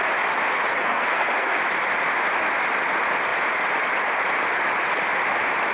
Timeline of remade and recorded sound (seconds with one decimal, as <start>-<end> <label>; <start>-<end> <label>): 0.0-0.7 recorded; 0.7-1.6 remade; 1.6-5.7 recorded